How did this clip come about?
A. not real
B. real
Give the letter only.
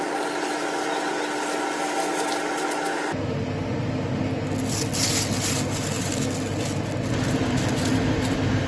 B